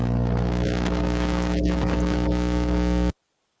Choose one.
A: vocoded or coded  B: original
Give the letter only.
B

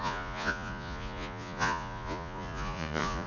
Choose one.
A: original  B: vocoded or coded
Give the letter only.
B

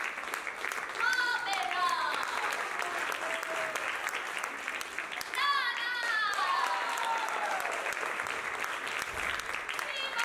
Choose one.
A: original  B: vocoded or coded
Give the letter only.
A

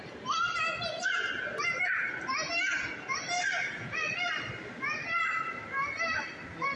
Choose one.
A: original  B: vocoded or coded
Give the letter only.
A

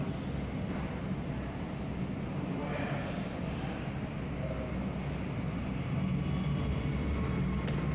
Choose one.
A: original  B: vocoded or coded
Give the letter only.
A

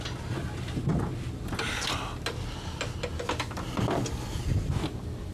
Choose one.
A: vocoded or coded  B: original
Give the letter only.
B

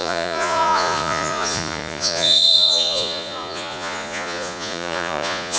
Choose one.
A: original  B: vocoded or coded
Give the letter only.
B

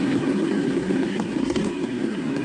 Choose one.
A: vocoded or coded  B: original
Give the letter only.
A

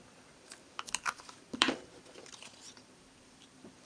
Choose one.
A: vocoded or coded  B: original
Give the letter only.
A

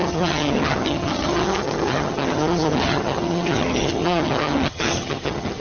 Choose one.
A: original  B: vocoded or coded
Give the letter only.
B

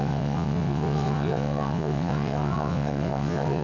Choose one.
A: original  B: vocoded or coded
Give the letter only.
B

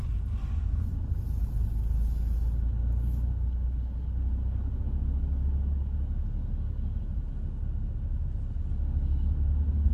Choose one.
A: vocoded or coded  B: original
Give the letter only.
B